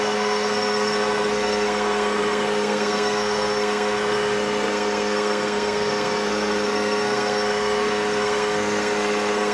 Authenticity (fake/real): fake